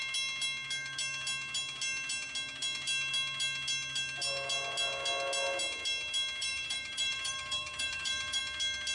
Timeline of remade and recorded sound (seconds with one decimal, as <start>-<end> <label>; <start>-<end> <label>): 0.0-6.4 recorded; 6.4-8.4 remade; 8.4-8.9 recorded